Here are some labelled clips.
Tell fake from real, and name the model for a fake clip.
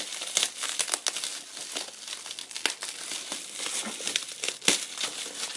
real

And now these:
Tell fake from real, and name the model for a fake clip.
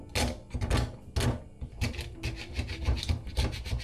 real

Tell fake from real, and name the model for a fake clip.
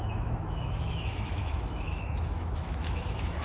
fake, autoencoder, DAC-VAE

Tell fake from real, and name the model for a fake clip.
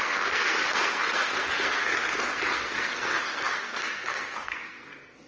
fake, codec, SNAC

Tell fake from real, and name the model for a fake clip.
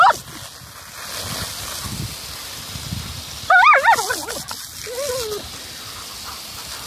real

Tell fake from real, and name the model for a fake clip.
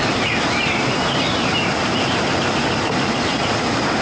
real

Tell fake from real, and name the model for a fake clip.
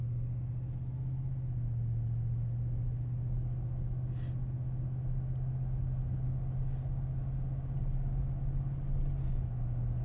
real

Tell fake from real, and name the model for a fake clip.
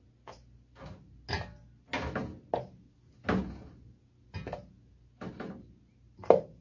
real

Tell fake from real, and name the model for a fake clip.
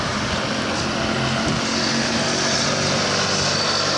real